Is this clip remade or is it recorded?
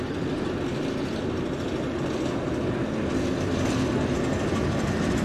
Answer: recorded